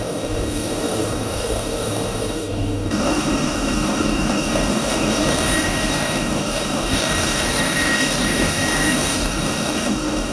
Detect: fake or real fake